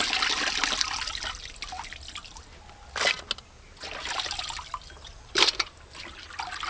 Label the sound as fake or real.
real